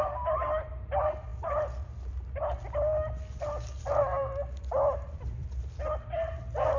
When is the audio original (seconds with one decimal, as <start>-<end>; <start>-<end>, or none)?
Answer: 0.0-6.8